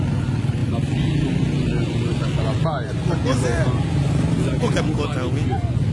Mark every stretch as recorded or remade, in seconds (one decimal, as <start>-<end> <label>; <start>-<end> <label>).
0.0-5.9 recorded